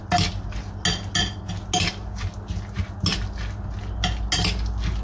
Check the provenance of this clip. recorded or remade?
recorded